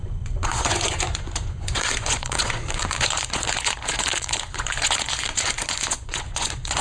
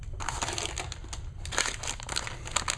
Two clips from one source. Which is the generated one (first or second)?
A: first